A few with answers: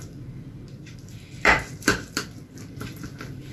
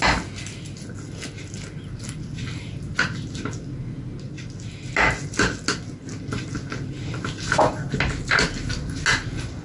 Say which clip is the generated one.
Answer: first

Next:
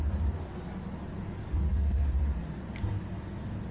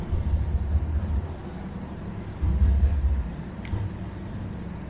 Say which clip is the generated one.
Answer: second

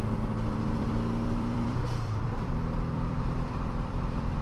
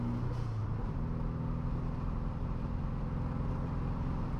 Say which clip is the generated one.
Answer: first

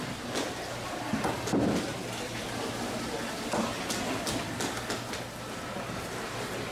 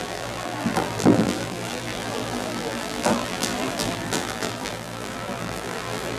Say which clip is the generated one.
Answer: second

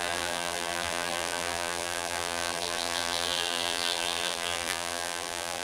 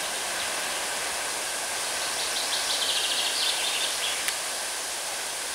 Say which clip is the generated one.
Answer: first